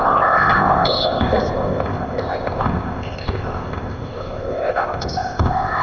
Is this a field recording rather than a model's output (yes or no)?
no